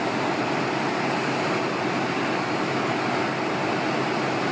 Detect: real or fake real